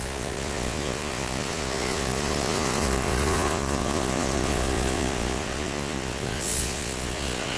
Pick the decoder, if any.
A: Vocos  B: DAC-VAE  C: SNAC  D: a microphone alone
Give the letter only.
A